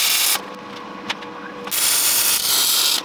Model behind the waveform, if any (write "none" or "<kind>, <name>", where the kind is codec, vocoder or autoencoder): none